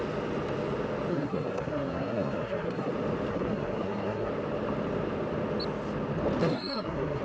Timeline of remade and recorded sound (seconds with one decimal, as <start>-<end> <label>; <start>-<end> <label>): 0.0-1.1 recorded; 1.1-2.9 remade; 2.9-3.3 recorded; 3.3-4.3 remade; 4.3-6.4 recorded; 6.4-7.2 remade